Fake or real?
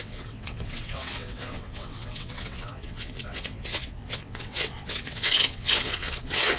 fake